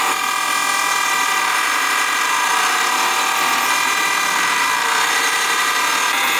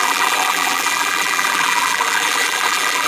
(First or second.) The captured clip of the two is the first